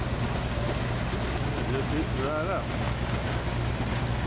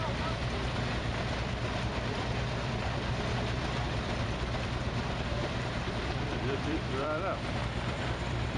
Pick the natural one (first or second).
first